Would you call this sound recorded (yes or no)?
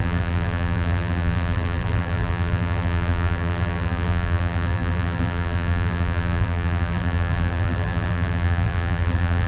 no